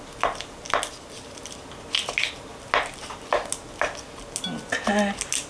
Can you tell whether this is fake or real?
real